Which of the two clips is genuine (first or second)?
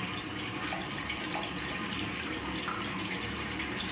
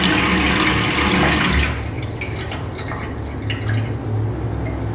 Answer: second